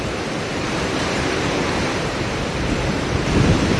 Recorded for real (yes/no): no